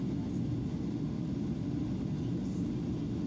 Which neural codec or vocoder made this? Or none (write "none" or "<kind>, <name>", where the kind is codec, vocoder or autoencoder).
none